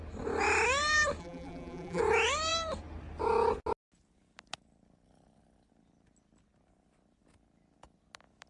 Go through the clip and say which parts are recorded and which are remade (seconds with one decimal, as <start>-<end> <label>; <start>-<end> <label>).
0.0-1.2 recorded; 1.2-2.0 remade; 2.0-8.5 recorded